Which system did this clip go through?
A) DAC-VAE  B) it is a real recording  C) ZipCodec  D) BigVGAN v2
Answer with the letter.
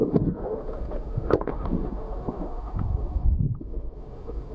A